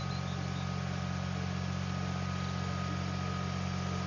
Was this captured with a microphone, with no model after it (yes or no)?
yes